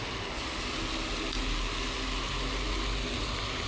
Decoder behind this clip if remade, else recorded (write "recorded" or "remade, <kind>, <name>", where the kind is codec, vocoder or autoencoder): recorded